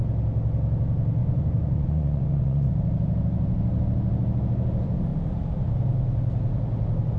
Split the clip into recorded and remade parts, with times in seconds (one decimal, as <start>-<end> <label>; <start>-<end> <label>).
0.0-1.2 recorded; 1.2-2.7 remade; 2.7-7.2 recorded